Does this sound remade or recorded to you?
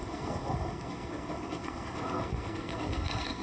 remade